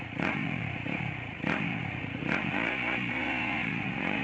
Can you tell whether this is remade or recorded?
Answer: remade